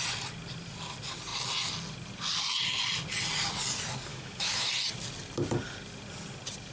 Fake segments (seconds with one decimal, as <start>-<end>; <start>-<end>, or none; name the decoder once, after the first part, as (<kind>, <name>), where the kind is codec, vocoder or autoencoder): 4.1-4.7 (autoencoder, DAC-VAE)